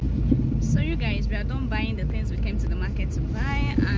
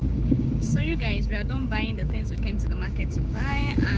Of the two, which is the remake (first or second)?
second